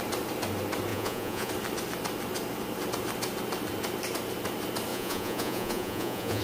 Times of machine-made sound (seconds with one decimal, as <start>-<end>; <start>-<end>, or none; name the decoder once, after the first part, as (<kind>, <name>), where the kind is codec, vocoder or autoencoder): 0.9-1.5 (vocoder, Vocos); 4.9-6.4